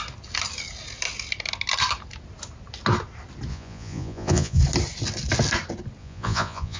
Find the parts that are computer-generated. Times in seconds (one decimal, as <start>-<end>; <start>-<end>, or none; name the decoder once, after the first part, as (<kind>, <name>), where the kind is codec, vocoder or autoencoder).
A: 3.5-4.6 (vocoder, Vocos); 6.0-6.8